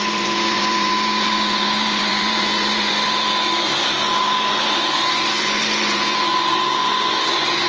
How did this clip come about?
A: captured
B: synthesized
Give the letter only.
B